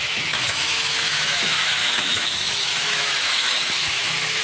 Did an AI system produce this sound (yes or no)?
yes